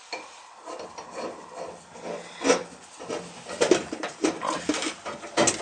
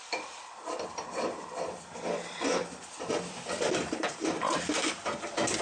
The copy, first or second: second